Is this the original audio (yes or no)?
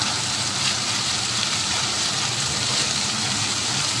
no